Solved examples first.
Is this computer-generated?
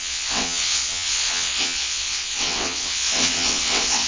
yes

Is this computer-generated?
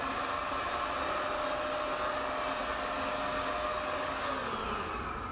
no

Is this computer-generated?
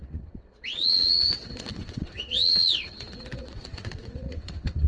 yes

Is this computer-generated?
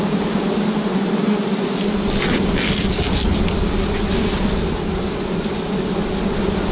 no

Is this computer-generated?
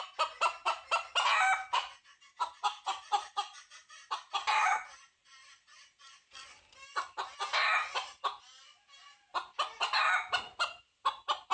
no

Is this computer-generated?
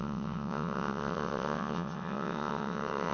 yes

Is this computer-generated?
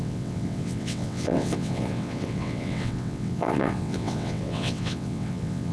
yes